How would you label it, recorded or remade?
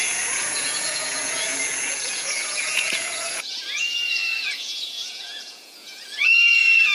remade